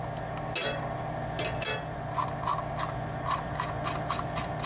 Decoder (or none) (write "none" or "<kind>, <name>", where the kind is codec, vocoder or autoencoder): none